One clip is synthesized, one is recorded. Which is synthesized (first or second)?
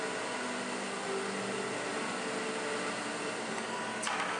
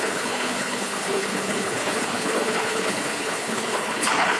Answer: second